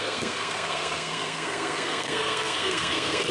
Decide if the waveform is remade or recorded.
remade